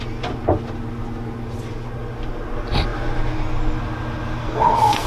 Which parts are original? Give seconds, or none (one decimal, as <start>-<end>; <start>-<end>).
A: 0.0-4.4